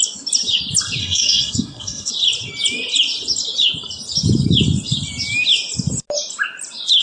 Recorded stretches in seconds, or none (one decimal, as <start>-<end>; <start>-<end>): 0.0-1.0; 2.1-7.0